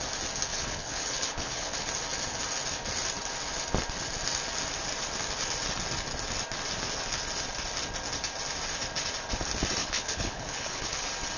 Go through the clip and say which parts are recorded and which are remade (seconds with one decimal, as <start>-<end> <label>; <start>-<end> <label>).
0.0-0.5 recorded; 0.5-1.9 remade; 1.9-9.8 recorded; 9.8-11.0 remade; 11.0-11.4 recorded